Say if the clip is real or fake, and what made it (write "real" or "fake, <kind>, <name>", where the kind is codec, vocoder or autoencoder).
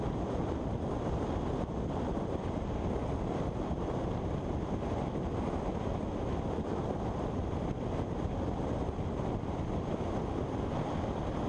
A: real